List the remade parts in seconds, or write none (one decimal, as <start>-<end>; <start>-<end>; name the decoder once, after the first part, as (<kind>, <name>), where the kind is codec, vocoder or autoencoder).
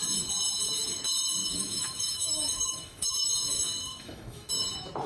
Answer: 1.4-4.5 (autoencoder, DAC-VAE)